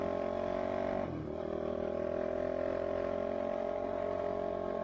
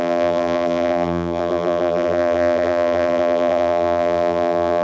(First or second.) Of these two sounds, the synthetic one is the second